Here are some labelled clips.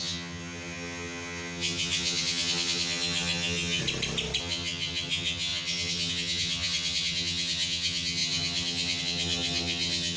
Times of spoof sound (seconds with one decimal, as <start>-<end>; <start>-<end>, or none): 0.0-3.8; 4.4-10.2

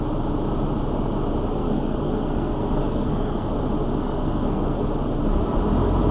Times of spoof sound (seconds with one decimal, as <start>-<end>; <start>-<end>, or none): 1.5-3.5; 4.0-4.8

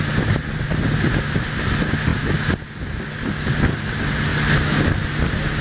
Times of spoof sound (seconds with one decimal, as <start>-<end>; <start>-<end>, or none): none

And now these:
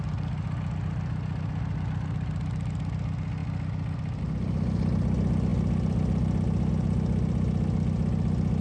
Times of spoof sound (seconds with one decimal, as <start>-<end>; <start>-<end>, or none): none